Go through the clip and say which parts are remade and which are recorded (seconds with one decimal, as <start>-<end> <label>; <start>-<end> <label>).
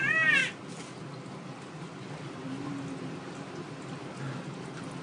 0.0-5.0 recorded